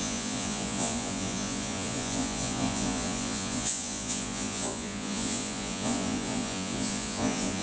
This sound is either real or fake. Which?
fake